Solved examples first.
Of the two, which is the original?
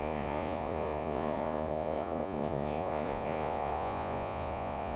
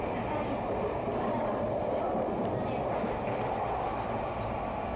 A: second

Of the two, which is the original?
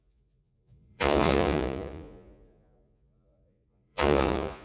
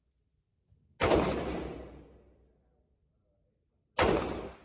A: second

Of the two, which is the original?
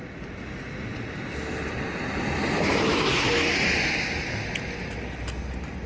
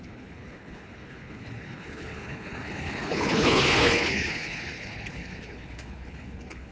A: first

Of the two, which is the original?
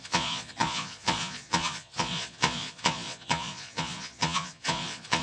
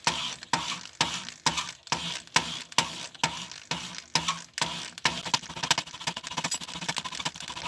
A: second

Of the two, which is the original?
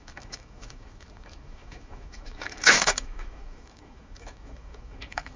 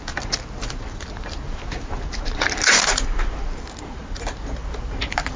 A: second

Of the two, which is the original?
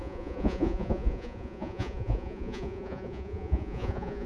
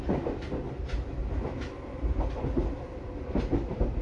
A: second